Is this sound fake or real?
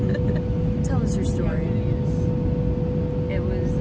real